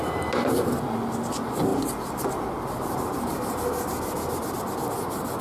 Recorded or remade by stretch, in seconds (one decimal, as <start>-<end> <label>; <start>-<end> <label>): 0.0-5.4 recorded